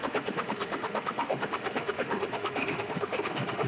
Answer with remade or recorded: remade